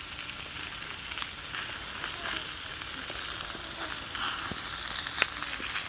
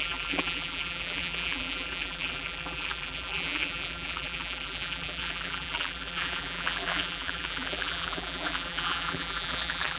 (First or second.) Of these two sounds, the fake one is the second